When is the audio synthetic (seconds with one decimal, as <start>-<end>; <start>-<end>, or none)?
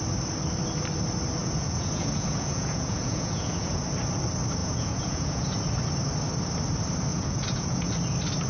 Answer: 1.4-3.8; 4.6-5.7; 7.1-7.9